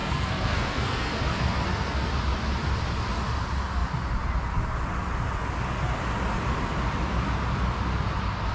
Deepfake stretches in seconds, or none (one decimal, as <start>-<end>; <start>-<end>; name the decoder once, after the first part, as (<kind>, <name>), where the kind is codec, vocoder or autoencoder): 0.0-2.1 (codec, SNAC)